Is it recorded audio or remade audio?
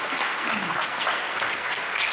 remade